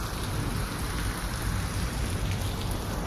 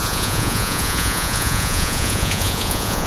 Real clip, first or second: first